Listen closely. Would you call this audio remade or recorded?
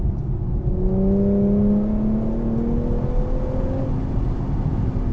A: recorded